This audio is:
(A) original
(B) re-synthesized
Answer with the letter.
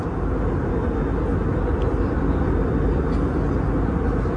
A